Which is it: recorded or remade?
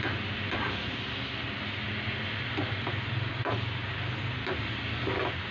recorded